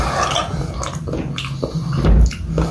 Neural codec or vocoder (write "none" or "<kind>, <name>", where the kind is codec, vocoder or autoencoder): none